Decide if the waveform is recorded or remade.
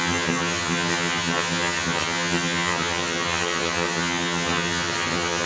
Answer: remade